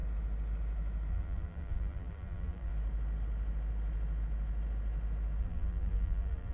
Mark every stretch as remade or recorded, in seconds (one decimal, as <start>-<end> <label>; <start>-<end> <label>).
0.0-1.1 recorded; 1.1-2.7 remade; 2.7-5.4 recorded; 5.4-6.5 remade